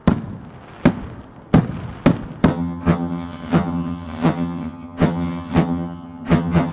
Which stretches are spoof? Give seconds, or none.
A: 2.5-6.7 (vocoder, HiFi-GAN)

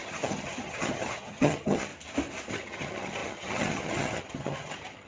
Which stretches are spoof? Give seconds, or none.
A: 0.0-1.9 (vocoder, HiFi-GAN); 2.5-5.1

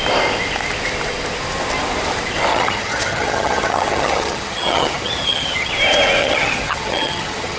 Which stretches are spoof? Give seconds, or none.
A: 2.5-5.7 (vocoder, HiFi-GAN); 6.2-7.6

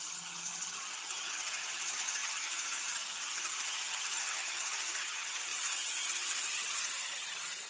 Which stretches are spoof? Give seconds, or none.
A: 0.0-7.7 (vocoder, HiFi-GAN)